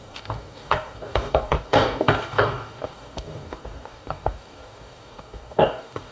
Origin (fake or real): fake